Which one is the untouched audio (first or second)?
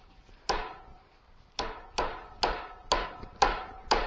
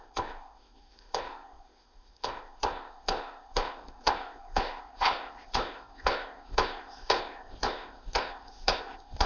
first